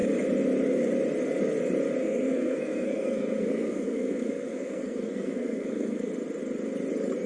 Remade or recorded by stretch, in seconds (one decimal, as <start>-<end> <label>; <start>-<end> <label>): 0.0-2.0 recorded; 2.0-6.1 remade; 6.1-7.3 recorded